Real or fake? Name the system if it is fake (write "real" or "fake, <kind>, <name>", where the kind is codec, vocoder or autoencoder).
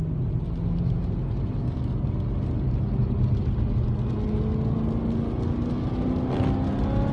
real